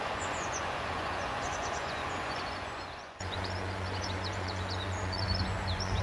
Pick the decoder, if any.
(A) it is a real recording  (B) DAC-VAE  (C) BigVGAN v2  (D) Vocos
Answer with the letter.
D